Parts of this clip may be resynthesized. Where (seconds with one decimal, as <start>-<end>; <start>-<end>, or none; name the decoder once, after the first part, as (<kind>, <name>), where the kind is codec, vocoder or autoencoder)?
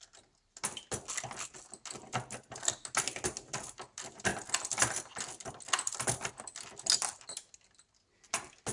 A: none